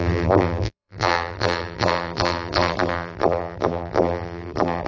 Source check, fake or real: fake